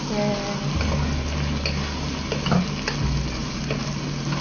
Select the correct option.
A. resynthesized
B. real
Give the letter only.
B